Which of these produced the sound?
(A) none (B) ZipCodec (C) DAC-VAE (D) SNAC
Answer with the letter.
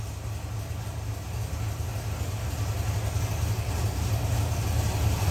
A